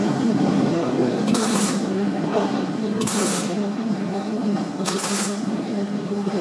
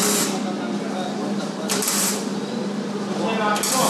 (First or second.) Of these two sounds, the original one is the second